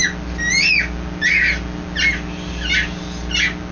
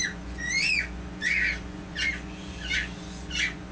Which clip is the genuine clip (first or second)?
first